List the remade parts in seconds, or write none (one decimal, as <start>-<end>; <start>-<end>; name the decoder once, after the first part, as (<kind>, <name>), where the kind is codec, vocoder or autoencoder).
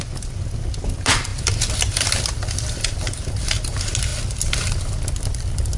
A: none